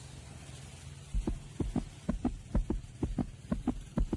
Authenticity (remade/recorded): recorded